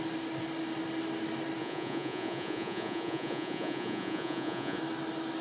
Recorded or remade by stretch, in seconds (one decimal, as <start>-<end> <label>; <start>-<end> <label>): 0.0-1.6 recorded; 1.6-4.8 remade; 4.8-5.4 recorded